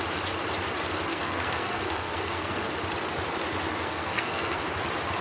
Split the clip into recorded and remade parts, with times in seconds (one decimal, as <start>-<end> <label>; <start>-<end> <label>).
0.0-1.1 recorded; 1.1-2.7 remade; 2.7-3.8 recorded; 3.8-4.6 remade; 4.6-5.2 recorded